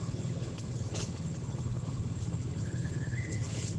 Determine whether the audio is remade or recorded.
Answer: remade